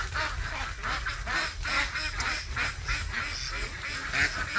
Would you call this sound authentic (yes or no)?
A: yes